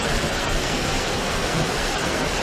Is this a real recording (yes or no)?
no